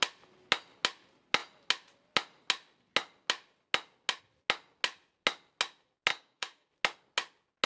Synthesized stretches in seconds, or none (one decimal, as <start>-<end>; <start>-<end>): 6.1-6.7